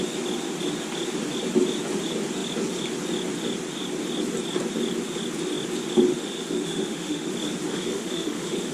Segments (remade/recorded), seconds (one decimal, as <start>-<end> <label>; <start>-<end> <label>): 0.0-6.1 recorded; 6.1-7.3 remade; 7.3-7.7 recorded; 7.7-8.7 remade